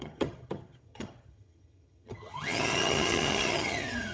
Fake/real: fake